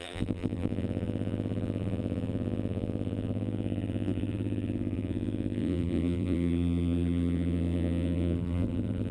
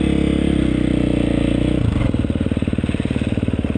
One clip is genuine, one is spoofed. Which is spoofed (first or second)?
first